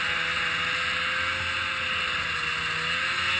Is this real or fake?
real